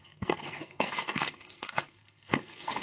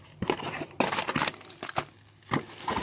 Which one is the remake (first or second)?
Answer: first